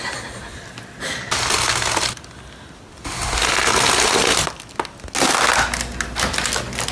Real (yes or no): yes